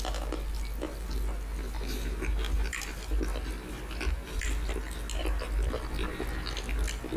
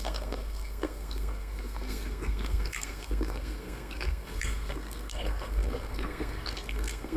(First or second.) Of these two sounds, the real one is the first